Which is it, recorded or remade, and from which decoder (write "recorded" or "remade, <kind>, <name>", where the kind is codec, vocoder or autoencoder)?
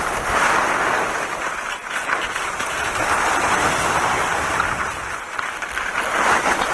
recorded